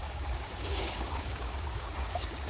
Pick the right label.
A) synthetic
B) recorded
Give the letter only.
A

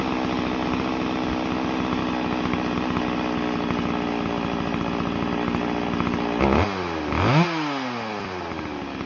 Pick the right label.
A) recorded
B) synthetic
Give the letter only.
A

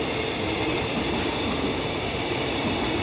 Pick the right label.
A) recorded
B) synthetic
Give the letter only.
A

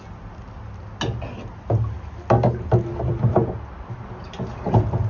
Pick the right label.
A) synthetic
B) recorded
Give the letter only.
B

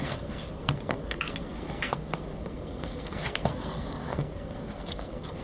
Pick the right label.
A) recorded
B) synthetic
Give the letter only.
B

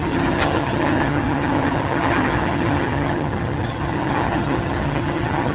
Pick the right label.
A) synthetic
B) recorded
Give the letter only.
A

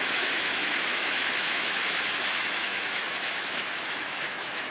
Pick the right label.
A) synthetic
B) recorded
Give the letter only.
A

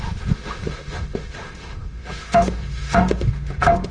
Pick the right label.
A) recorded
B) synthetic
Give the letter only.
B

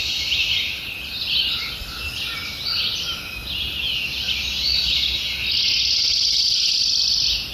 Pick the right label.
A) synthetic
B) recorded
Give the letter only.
B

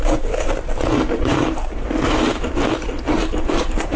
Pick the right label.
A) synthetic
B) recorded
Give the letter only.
A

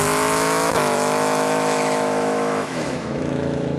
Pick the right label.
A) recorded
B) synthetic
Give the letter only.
B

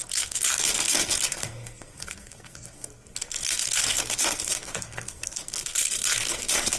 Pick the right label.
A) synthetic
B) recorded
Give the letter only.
A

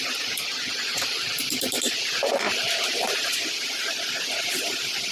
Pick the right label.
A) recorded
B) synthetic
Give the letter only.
B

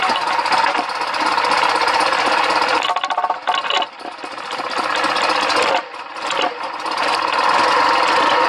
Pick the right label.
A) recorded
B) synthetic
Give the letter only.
A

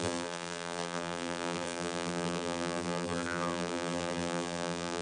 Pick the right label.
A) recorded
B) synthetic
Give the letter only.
B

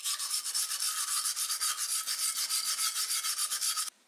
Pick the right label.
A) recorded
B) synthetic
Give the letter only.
A